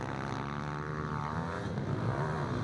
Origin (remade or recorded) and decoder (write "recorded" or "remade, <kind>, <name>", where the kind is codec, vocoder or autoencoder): recorded